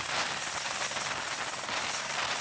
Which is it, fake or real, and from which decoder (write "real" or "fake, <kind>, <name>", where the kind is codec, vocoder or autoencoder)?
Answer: real